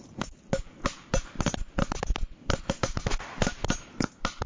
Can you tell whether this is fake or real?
real